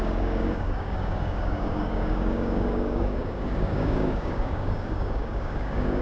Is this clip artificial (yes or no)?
yes